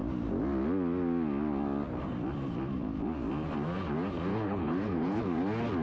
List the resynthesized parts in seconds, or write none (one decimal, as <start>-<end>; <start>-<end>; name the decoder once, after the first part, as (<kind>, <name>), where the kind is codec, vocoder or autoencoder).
4.3-5.2 (codec, HILCodec)

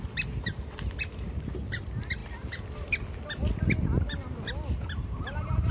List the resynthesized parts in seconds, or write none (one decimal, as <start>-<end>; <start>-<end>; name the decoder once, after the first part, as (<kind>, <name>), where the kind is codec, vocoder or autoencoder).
none

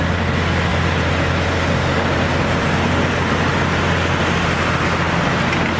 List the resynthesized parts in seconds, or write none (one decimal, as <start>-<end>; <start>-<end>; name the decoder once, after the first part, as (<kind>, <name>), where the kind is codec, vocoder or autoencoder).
none

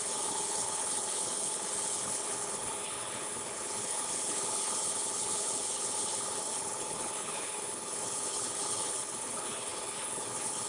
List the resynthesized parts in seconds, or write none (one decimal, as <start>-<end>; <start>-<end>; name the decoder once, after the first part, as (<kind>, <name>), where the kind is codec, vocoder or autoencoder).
0.0-10.7 (codec, HILCodec)